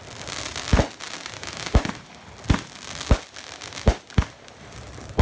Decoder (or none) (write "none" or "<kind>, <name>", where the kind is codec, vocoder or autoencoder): none